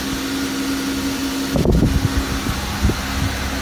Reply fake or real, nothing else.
real